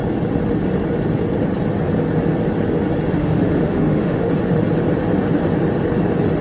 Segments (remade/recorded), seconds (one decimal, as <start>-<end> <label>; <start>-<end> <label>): 0.0-3.2 recorded; 3.2-4.3 remade; 4.3-6.4 recorded